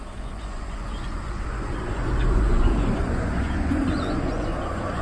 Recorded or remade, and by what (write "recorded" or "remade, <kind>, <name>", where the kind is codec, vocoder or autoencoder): remade, vocoder, Vocos